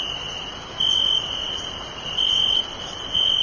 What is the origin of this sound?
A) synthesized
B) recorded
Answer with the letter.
B